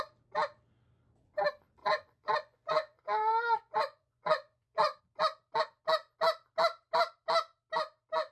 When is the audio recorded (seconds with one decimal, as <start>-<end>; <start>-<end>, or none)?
0.0-1.8; 5.0-8.3